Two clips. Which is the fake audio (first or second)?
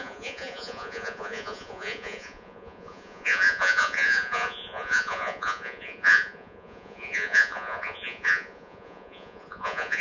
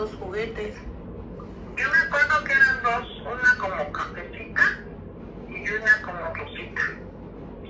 first